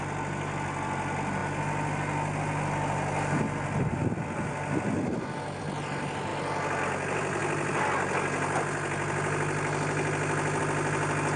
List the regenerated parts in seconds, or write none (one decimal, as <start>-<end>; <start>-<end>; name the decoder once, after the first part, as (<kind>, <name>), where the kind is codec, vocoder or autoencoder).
none